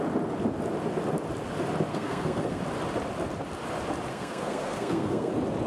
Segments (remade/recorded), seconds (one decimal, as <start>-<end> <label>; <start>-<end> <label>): 0.0-1.9 recorded; 1.9-2.6 remade; 2.6-4.1 recorded; 4.1-5.3 remade; 5.3-5.7 recorded

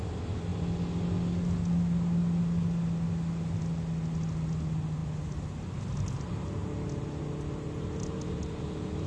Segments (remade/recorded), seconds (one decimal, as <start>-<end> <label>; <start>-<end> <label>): 0.0-9.1 recorded

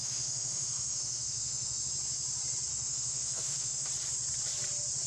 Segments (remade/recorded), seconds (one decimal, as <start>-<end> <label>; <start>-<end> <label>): 0.0-1.8 remade; 1.8-2.7 recorded; 2.7-3.9 remade; 3.9-5.1 recorded

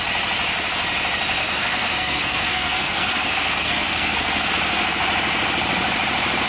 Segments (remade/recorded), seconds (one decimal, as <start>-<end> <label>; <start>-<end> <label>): 0.0-1.4 recorded; 1.4-4.5 remade; 4.5-6.5 recorded

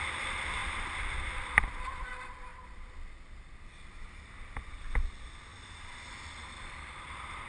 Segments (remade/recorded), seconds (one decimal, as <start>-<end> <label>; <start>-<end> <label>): 0.0-7.5 recorded

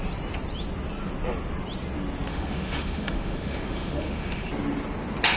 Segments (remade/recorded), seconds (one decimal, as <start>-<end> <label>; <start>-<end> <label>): 0.0-2.3 recorded; 2.3-4.5 remade; 4.5-5.4 recorded

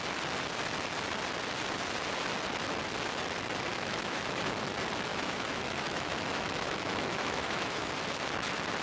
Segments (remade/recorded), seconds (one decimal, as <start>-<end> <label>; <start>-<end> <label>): 0.0-3.7 recorded; 3.7-4.4 remade; 4.4-5.1 recorded; 5.1-7.9 remade; 7.9-8.8 recorded